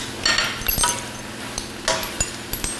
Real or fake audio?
real